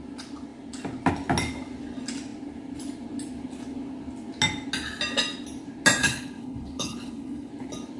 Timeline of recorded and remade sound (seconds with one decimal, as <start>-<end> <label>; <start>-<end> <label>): 0.0-6.0 recorded; 6.0-7.5 remade; 7.5-8.0 recorded